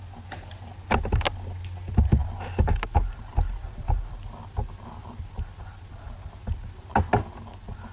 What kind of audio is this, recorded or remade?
recorded